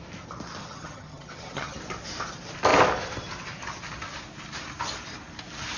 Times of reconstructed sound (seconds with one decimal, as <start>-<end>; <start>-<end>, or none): 0.6-1.8